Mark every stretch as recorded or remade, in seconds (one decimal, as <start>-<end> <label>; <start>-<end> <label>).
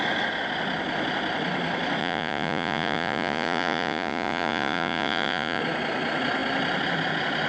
0.0-2.0 recorded; 2.0-5.6 remade; 5.6-7.5 recorded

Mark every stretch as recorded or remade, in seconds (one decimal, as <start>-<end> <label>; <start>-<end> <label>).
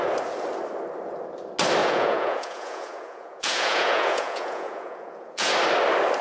0.0-1.8 recorded; 1.8-5.5 remade; 5.5-6.2 recorded